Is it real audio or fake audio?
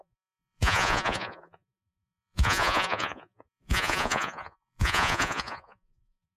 fake